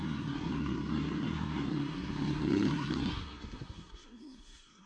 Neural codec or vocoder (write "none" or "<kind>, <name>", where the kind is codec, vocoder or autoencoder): codec, SNAC